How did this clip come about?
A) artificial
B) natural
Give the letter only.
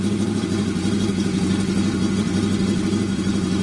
B